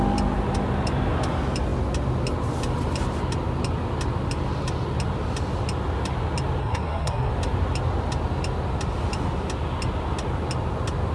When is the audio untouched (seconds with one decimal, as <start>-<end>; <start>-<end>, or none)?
0.0-6.6; 7.3-11.1